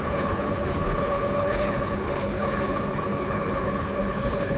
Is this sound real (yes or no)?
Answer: no